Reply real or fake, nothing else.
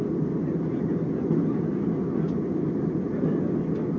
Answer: real